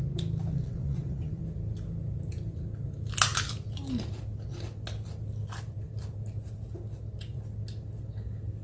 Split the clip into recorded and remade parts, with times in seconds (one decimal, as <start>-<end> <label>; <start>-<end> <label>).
0.0-0.5 recorded; 0.5-1.4 remade; 1.4-8.6 recorded